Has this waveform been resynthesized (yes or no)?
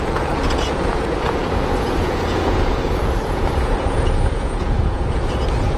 yes